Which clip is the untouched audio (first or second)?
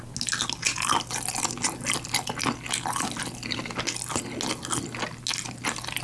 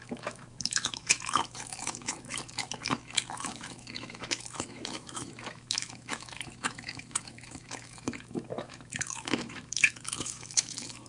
first